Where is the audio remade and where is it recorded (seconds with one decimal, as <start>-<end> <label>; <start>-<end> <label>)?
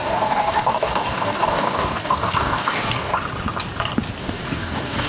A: 0.0-3.1 remade; 3.1-4.2 recorded; 4.2-5.1 remade